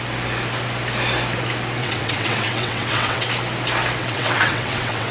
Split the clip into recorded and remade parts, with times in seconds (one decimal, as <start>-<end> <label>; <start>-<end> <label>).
0.0-1.8 recorded; 1.8-3.3 remade; 3.3-4.0 recorded; 4.0-5.1 remade